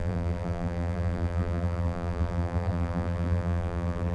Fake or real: fake